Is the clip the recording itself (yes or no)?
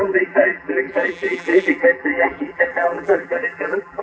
no